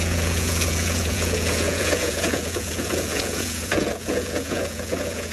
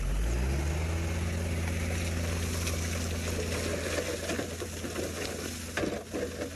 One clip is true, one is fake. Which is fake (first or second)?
first